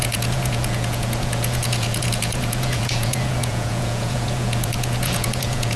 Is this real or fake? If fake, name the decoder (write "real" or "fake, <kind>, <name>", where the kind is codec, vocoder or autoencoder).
fake, vocoder, Vocos